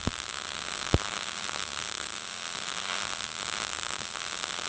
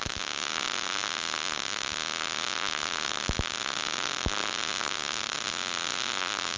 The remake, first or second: first